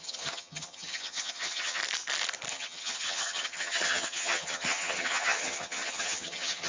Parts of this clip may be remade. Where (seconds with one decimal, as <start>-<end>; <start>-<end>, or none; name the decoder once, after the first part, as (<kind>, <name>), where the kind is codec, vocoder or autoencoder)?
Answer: 0.0-1.8 (vocoder, HiFi-GAN); 2.5-6.7